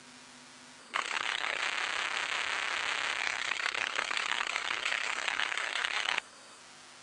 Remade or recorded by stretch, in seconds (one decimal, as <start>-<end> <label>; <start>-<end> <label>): 0.0-0.8 recorded; 0.8-1.6 remade; 1.6-3.2 recorded; 3.2-6.6 remade; 6.6-7.0 recorded